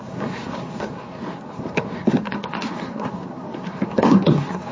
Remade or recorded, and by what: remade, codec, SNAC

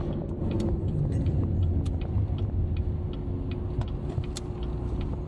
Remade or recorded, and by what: recorded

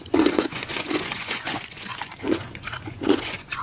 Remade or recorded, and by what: remade, vocoder, Vocos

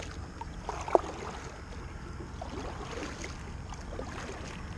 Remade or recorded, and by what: recorded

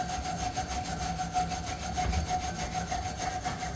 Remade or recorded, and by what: recorded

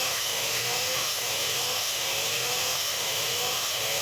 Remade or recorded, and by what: remade, autoencoder, DAC-VAE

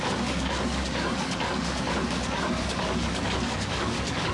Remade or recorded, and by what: remade, codec, DAC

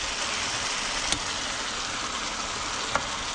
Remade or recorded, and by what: recorded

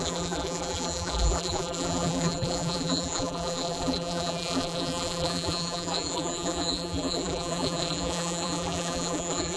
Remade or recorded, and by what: remade, vocoder, BigVGAN v2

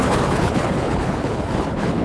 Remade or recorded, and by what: remade, codec, HILCodec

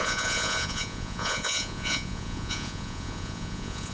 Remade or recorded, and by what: remade, vocoder, Vocos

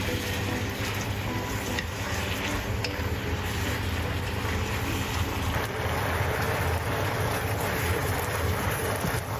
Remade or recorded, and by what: recorded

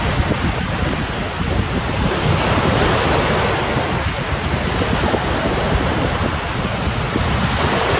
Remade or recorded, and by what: recorded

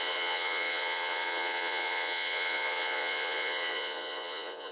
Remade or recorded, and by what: remade, vocoder, Vocos